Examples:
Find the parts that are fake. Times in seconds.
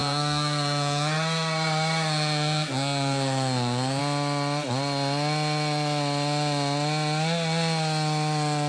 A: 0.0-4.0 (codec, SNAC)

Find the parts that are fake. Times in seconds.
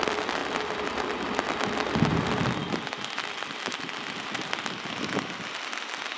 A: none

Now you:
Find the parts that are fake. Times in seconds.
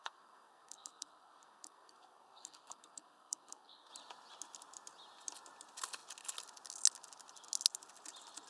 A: 0.0-3.9 (codec, SNAC)